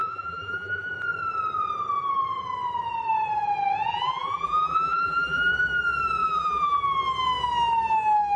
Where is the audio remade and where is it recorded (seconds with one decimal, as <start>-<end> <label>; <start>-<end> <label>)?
0.0-0.9 remade; 0.9-3.9 recorded; 3.9-5.5 remade; 5.5-6.2 recorded; 6.2-6.8 remade; 6.8-8.4 recorded